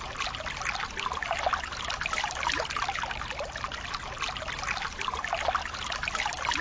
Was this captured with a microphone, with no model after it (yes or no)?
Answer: yes